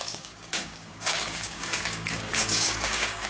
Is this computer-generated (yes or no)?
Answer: yes